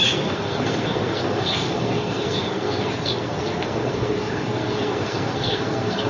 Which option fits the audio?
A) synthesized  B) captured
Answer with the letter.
A